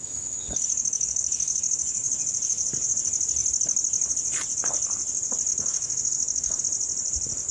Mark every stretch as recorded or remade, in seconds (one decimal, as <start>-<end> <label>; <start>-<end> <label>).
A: 0.0-2.1 remade; 2.1-5.5 recorded; 5.5-6.6 remade; 6.6-7.5 recorded